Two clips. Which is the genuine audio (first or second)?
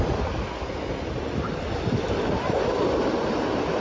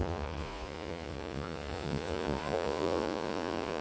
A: first